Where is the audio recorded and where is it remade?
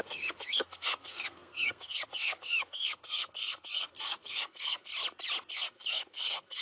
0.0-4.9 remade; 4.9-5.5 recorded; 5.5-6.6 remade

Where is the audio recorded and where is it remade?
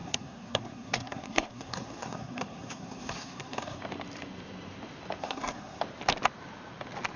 0.0-3.8 remade; 3.8-5.2 recorded; 5.2-5.8 remade; 5.8-7.2 recorded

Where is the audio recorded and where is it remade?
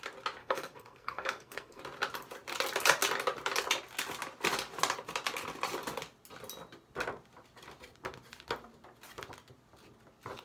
0.0-0.4 recorded; 0.4-1.8 remade; 1.8-10.4 recorded